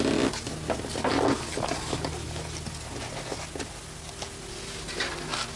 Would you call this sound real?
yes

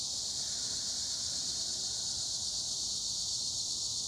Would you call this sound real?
yes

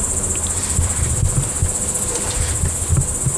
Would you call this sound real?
yes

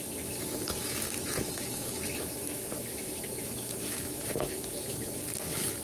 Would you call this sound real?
no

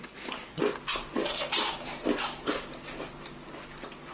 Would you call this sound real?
yes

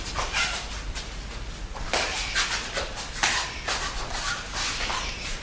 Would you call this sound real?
yes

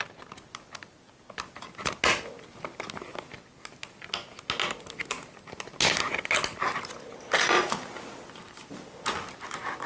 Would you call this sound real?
yes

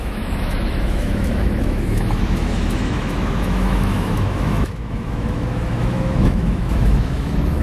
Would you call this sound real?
no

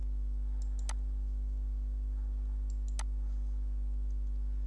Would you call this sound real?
yes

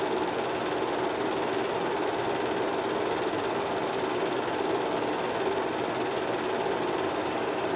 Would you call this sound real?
yes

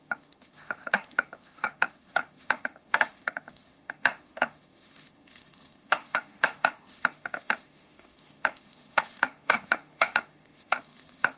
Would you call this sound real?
no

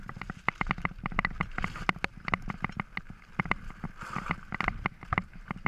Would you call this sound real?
yes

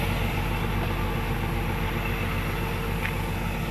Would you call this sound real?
yes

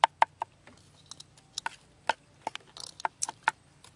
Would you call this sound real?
yes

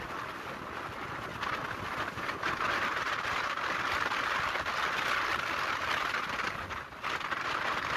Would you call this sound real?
yes